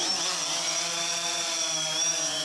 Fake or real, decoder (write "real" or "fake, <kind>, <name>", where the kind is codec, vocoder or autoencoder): real